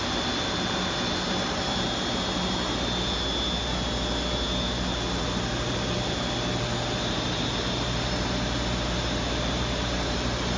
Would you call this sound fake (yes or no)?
no